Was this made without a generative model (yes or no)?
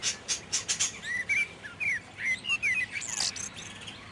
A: yes